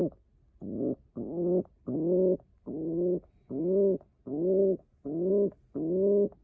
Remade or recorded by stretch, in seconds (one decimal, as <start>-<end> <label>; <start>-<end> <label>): 0.0-6.4 recorded